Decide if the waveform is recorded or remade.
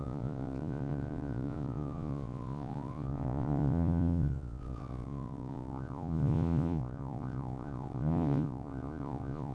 remade